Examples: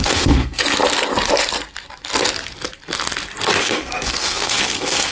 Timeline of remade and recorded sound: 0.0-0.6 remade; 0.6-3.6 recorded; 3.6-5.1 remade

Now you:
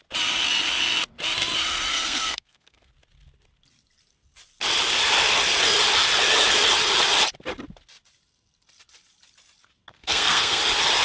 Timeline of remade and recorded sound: 0.0-1.9 recorded; 1.9-2.9 remade; 2.9-9.9 recorded; 9.9-10.6 remade; 10.6-11.0 recorded

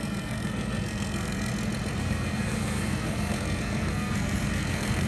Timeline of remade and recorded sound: 0.0-1.5 remade; 1.5-2.0 recorded; 2.0-5.1 remade

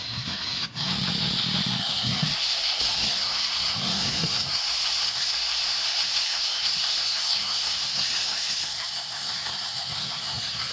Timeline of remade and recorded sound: 0.0-0.9 remade; 0.9-1.8 recorded; 1.8-10.7 remade